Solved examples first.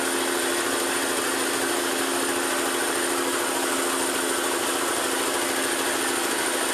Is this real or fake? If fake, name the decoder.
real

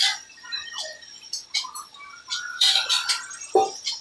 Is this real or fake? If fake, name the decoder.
fake, vocoder, BigVGAN v2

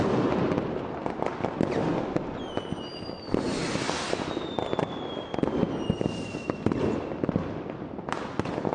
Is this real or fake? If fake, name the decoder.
real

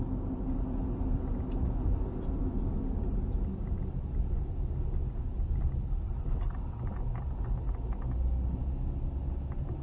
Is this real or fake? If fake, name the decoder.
real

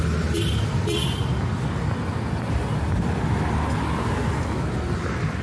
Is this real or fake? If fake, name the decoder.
real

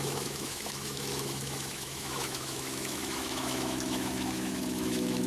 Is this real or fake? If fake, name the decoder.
fake, autoencoder, DAC-VAE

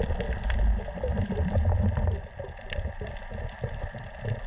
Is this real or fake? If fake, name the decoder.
real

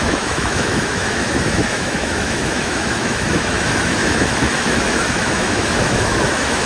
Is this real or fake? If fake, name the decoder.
fake, autoencoder, DAC-VAE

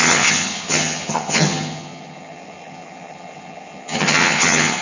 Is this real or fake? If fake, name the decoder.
fake, vocoder, HiFi-GAN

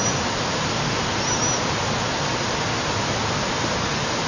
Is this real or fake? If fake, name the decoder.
real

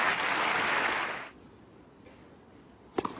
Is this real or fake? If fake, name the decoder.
real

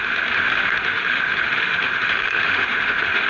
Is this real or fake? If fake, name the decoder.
fake, autoencoder, DAC-VAE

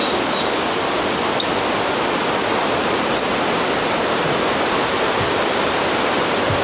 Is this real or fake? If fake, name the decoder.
real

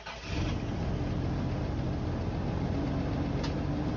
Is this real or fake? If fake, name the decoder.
real